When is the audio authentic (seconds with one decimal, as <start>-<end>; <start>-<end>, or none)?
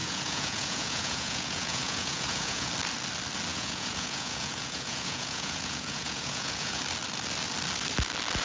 2.7-3.5; 6.8-8.4